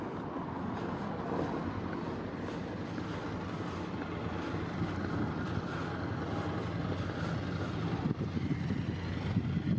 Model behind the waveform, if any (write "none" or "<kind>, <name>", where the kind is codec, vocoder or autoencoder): none